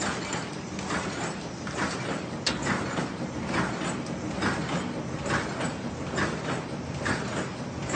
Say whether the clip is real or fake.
real